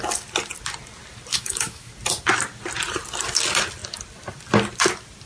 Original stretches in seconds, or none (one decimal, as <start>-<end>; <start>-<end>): 0.0-1.3; 1.9-5.3